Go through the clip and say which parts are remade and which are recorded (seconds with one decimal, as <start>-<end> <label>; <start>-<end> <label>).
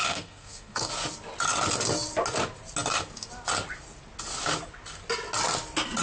0.0-0.9 remade; 0.9-6.0 recorded